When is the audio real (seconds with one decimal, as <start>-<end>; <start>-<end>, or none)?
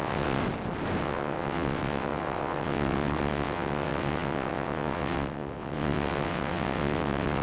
0.4-1.0